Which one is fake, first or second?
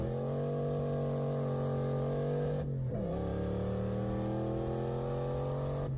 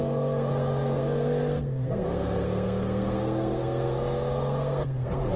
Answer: second